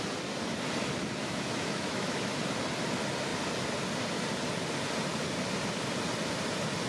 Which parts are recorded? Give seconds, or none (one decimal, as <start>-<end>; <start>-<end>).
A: 0.0-1.2; 2.4-6.9

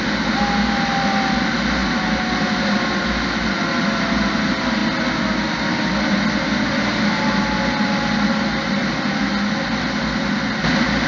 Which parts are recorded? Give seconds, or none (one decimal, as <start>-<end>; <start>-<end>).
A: 0.0-11.1

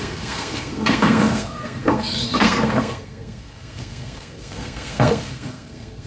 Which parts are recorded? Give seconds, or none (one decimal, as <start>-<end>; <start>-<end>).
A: none

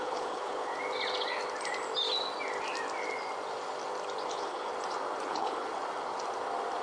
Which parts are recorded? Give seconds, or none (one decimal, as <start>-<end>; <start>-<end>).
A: 0.7-4.3; 4.7-5.3; 5.7-6.8

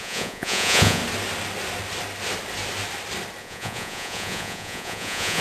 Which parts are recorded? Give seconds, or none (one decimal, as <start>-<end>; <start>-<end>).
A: 1.0-3.4